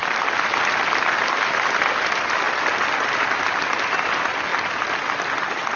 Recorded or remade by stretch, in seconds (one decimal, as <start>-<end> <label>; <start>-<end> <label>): 0.0-5.8 recorded